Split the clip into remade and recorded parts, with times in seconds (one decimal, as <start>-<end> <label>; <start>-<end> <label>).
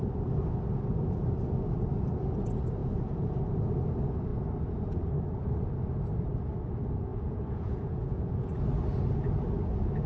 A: 0.0-2.8 recorded; 2.8-3.4 remade; 3.4-7.1 recorded; 7.1-8.5 remade; 8.5-10.1 recorded